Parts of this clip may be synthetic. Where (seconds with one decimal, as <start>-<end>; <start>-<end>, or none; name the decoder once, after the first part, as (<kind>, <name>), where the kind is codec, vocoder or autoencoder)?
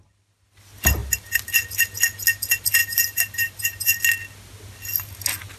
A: 2.8-4.0 (vocoder, BigVGAN v2)